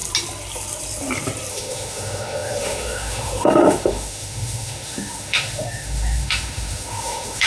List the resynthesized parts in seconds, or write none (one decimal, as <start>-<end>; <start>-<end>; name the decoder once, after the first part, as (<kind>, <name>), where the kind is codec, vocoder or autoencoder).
1.5-7.5 (autoencoder, DAC-VAE)